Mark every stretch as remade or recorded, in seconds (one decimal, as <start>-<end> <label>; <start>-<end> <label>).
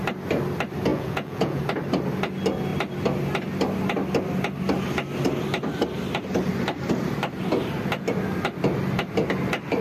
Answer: 0.0-0.9 recorded; 0.9-1.6 remade; 1.6-9.8 recorded